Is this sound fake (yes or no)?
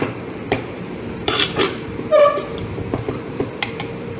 yes